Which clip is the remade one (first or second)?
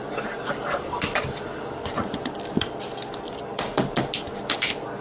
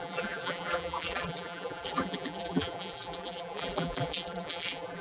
second